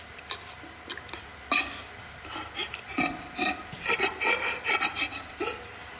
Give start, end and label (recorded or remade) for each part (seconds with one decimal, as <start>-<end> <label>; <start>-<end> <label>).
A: 0.0-6.0 recorded